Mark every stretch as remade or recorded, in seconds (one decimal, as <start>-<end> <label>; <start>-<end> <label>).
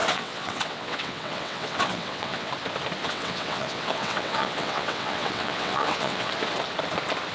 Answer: 0.0-2.5 remade; 2.5-3.0 recorded; 3.0-6.3 remade; 6.3-7.3 recorded